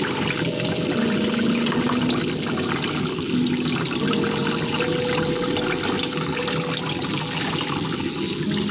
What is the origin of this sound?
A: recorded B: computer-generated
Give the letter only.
A